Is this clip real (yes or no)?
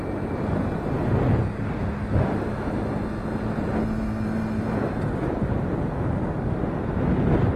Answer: yes